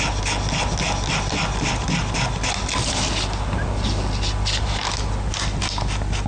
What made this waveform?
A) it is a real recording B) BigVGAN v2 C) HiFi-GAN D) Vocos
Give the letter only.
A